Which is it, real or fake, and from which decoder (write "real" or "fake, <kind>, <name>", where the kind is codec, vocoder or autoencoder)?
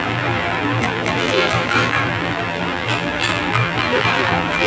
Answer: fake, vocoder, BigVGAN v2